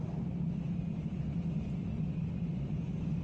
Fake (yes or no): no